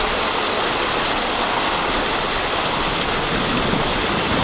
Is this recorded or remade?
recorded